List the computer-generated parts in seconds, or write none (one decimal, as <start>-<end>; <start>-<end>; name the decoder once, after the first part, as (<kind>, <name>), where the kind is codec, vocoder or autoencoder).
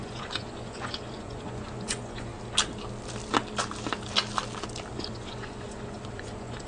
0.0-2.3 (vocoder, Vocos); 4.9-6.7